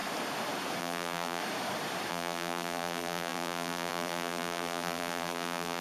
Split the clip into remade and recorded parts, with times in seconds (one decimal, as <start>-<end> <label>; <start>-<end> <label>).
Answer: 0.0-0.8 recorded; 0.8-1.4 remade; 1.4-2.1 recorded; 2.1-5.8 remade